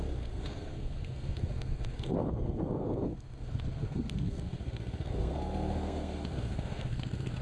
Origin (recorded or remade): remade